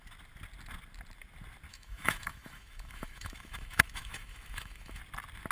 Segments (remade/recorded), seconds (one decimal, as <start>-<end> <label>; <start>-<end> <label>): 0.0-1.7 recorded; 1.7-5.0 remade; 5.0-5.5 recorded